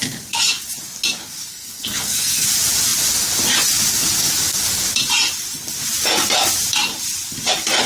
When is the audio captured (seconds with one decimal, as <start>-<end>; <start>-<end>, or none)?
0.0-1.5; 2.5-7.9